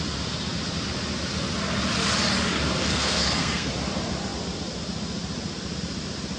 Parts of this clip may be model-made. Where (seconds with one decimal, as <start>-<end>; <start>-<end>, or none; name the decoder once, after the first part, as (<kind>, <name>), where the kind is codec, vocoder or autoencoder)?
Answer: 2.9-3.7 (codec, SNAC)